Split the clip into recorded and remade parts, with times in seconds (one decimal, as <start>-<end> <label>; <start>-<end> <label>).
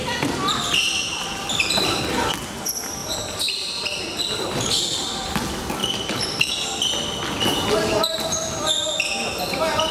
0.0-1.1 recorded; 1.1-2.0 remade; 2.0-3.0 recorded; 3.0-4.4 remade; 4.4-5.8 recorded; 5.8-6.5 remade; 6.5-9.9 recorded